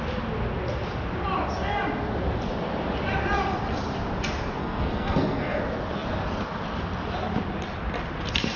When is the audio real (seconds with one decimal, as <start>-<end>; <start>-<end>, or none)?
0.0-4.6; 5.6-8.6